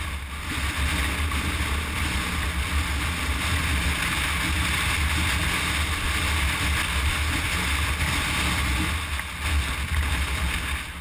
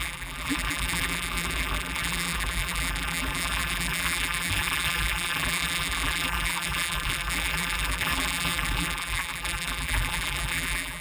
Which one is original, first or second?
first